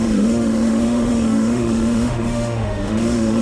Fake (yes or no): yes